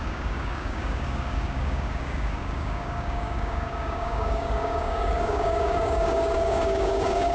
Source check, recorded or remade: remade